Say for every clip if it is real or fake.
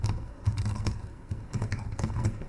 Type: fake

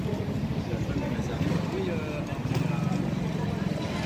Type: real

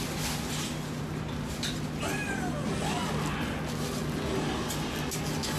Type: real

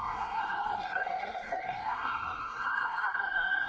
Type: fake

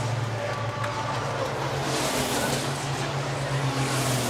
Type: real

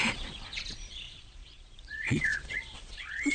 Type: fake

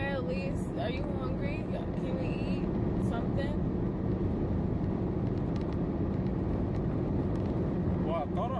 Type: real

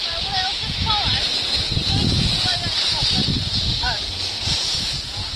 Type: fake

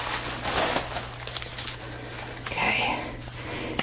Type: real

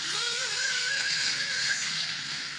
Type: fake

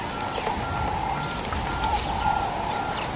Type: real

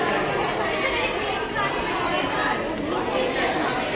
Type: real